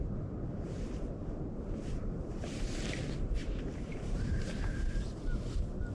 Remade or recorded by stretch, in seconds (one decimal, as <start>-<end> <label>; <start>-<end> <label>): 0.0-3.4 recorded; 3.4-4.5 remade; 4.5-5.9 recorded